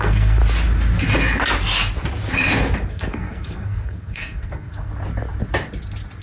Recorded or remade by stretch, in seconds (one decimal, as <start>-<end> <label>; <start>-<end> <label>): 0.0-0.4 remade; 0.4-2.9 recorded; 2.9-4.9 remade; 4.9-6.2 recorded